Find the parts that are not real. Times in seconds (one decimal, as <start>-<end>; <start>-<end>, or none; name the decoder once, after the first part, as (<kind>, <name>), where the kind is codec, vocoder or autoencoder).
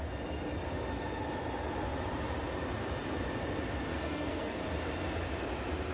3.9-4.6 (codec, SNAC)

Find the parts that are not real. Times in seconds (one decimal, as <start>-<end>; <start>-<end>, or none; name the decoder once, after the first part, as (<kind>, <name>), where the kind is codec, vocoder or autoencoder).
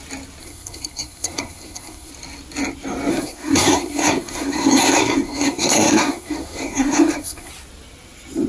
0.4-2.1 (codec, SNAC); 3.1-7.5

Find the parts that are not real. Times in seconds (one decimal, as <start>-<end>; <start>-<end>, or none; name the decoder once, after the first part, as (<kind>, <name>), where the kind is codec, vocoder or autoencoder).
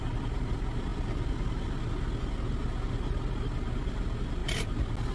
none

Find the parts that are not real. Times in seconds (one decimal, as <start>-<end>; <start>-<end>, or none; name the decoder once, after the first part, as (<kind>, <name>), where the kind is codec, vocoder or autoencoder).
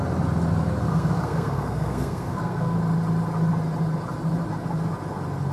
0.9-2.8 (codec, SNAC)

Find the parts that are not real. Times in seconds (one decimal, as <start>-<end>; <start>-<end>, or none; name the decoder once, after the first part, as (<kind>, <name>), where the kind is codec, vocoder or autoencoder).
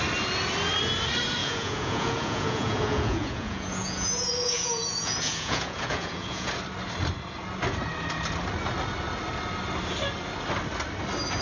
1.4-6.5 (vocoder, Vocos)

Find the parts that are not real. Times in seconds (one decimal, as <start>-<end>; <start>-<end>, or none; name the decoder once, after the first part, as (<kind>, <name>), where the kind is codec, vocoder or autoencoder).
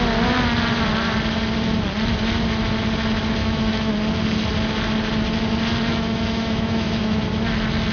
3.4-3.9 (autoencoder, DAC-VAE); 5.9-7.2